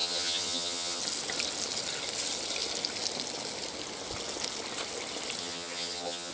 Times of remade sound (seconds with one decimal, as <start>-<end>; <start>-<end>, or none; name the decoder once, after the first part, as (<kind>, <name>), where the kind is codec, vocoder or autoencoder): 0.0-1.0 (vocoder, HiFi-GAN); 5.4-6.3